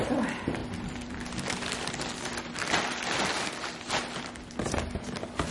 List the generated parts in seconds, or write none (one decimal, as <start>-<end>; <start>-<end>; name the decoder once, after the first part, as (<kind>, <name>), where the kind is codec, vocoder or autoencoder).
0.6-3.3 (vocoder, BigVGAN v2)